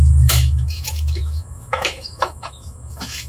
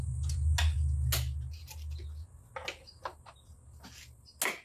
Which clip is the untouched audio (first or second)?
second